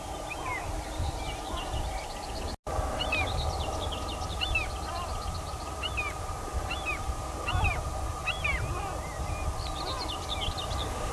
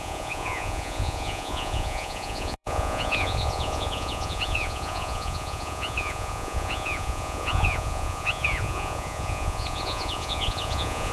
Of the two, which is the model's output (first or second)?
second